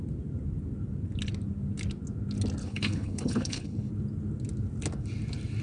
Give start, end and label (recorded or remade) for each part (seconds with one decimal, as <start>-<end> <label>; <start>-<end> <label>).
0.0-2.6 recorded; 2.6-3.9 remade; 3.9-5.6 recorded

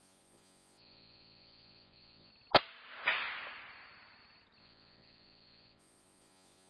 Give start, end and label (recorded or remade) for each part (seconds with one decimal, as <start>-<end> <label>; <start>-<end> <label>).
0.0-2.3 remade; 2.3-4.6 recorded; 4.6-6.7 remade

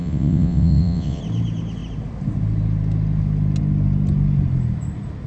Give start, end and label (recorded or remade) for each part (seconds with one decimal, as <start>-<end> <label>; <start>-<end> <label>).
0.0-1.2 remade; 1.2-5.3 recorded

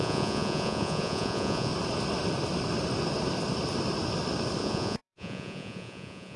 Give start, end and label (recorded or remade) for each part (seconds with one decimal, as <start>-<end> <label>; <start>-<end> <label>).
0.0-1.7 remade; 1.7-4.6 recorded; 4.6-6.4 remade

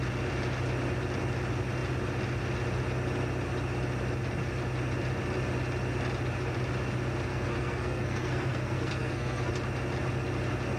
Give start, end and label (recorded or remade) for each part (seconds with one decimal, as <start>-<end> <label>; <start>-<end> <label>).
0.0-7.3 recorded; 7.3-9.5 remade; 9.5-10.8 recorded

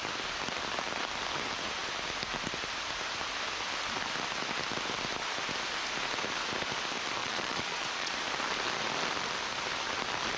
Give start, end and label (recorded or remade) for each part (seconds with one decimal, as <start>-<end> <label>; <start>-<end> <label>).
0.0-7.2 recorded; 7.2-8.1 remade; 8.1-10.4 recorded

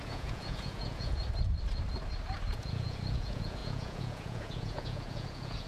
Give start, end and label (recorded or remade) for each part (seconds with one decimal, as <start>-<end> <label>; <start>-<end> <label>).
0.0-1.2 remade; 1.2-2.5 recorded; 2.5-5.7 remade

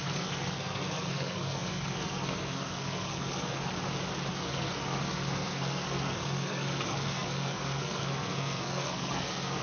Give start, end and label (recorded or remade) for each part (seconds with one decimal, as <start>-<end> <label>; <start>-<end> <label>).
0.0-3.7 remade; 3.7-4.3 recorded; 4.3-9.6 remade